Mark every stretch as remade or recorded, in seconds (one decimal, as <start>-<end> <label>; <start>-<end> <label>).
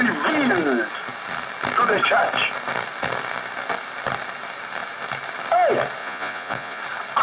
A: 0.0-6.0 recorded; 6.0-6.8 remade; 6.8-7.2 recorded